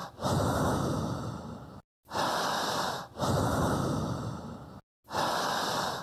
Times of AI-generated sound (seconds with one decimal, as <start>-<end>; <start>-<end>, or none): none